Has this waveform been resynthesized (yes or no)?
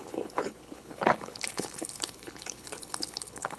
yes